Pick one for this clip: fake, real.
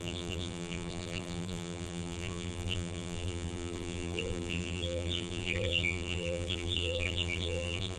fake